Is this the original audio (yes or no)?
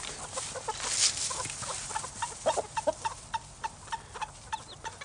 yes